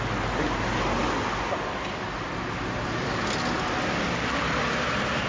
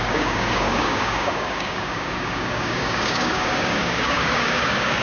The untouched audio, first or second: first